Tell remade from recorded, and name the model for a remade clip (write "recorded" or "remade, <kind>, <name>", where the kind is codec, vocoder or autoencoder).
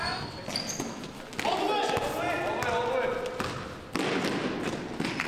recorded